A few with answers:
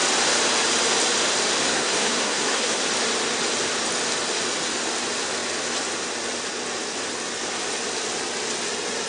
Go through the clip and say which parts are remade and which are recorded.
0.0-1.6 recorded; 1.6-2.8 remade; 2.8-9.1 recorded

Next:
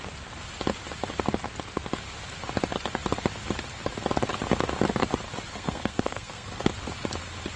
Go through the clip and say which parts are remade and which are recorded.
0.0-5.5 recorded; 5.5-6.7 remade; 6.7-7.6 recorded

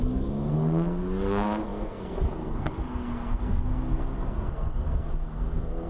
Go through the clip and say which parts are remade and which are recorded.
0.0-5.9 remade